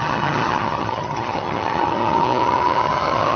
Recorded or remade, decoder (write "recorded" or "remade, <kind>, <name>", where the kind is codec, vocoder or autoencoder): remade, vocoder, HiFi-GAN